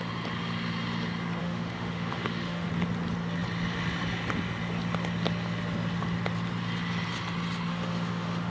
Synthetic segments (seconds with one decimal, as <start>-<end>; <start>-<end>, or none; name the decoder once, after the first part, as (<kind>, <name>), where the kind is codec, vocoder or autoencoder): 1.4-2.7 (autoencoder, DAC-VAE); 7.7-8.5